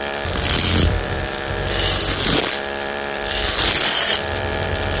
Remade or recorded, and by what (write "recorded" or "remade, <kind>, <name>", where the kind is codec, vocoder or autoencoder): remade, vocoder, BigVGAN v2